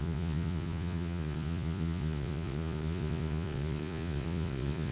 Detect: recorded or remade remade